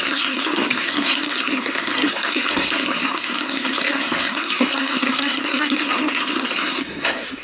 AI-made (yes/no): yes